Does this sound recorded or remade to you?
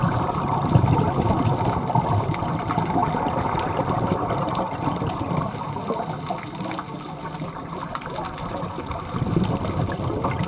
recorded